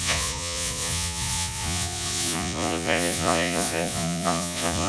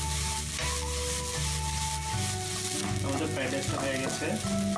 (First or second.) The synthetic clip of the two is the first